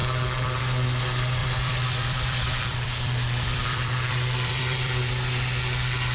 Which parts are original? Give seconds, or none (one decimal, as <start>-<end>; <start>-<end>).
0.6-1.4; 5.1-6.1